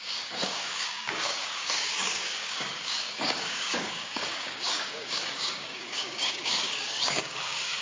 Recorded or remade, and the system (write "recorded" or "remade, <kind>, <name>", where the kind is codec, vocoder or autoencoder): remade, codec, DAC